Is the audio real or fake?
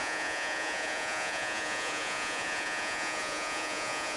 fake